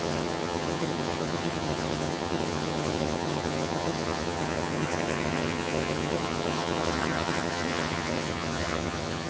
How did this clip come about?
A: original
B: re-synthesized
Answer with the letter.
B